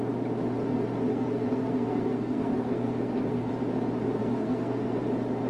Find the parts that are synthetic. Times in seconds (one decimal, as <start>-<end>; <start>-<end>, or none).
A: 1.1-3.5; 4.2-5.0